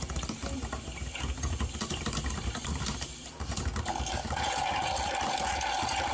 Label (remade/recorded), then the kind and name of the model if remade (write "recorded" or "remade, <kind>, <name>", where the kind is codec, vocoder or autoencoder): recorded